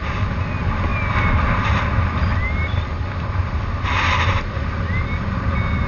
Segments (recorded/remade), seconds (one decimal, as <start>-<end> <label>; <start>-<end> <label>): 0.0-5.9 recorded